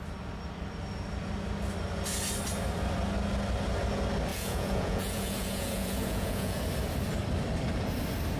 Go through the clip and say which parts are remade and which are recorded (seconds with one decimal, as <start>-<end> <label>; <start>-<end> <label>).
0.0-4.3 recorded; 4.3-6.6 remade; 6.6-8.4 recorded